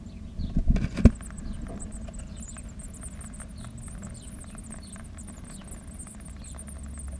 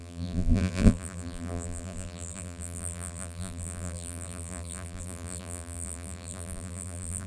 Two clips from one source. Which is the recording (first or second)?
first